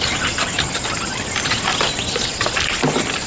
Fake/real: real